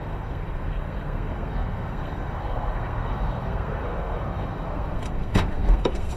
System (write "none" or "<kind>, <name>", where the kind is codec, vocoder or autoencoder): codec, SNAC